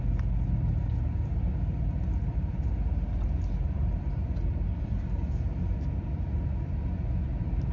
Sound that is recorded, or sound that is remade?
recorded